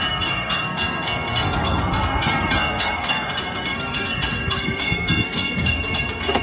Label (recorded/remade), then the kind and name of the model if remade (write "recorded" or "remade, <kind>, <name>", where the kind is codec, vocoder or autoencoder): remade, codec, SNAC